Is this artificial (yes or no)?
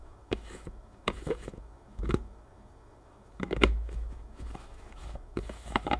yes